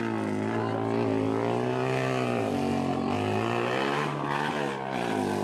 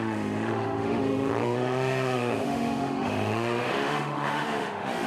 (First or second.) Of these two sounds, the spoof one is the second